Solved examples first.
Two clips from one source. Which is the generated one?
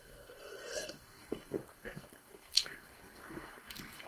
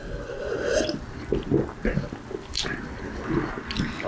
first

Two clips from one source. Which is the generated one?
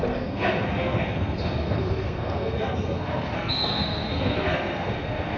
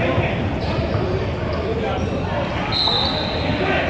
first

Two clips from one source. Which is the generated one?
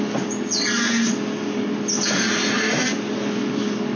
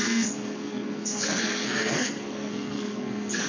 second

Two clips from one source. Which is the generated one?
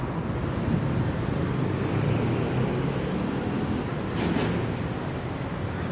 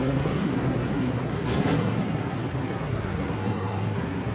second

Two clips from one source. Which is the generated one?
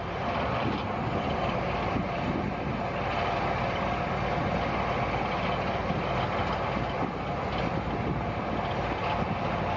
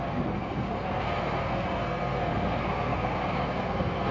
second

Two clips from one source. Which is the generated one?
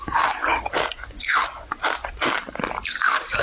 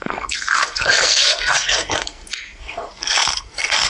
second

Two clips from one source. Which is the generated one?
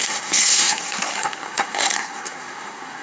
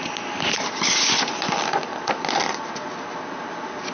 first